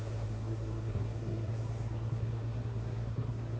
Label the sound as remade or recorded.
remade